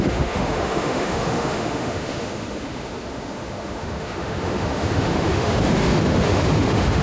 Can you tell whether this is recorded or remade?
remade